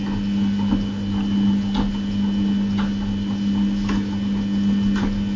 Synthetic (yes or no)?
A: no